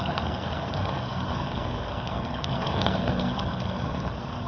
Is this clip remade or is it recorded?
remade